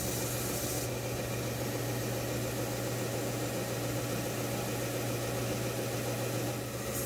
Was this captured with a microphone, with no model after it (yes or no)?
yes